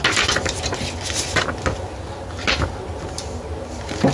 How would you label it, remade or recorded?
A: recorded